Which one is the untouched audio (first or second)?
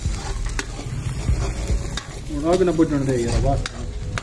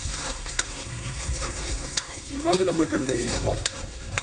first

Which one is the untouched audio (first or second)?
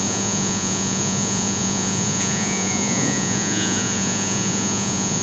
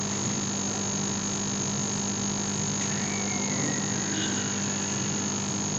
second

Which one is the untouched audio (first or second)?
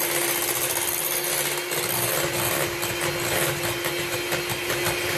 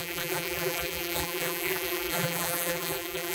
first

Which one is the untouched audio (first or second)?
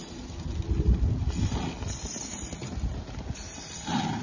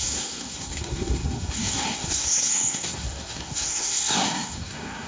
first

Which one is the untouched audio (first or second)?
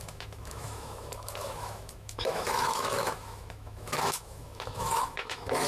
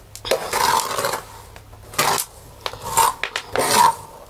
second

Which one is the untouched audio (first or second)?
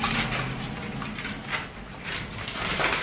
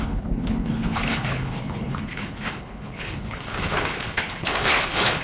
first